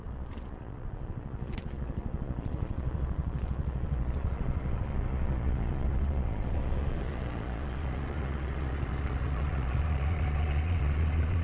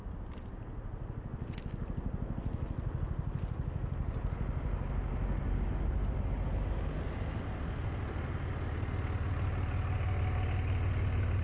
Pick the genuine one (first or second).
second